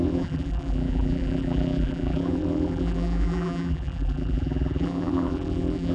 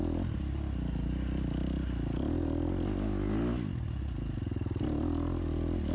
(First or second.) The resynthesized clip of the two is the first